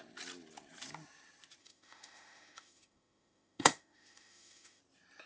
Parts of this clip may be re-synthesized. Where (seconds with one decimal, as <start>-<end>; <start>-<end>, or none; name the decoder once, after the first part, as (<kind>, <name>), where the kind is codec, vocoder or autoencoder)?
1.6-4.8 (autoencoder, DAC-VAE)